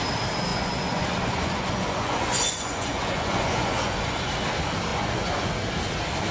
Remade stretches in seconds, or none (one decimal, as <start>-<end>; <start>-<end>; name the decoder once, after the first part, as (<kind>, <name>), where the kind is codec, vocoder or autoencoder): 0.5-4.3 (vocoder, Vocos); 4.9-5.5